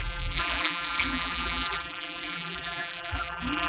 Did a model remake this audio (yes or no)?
yes